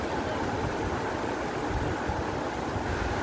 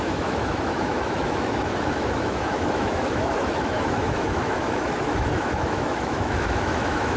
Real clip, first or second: first